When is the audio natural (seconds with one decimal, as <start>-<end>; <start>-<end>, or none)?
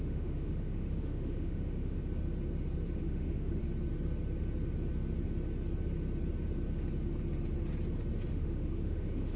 2.0-3.0; 3.6-8.3